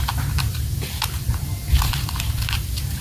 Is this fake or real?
fake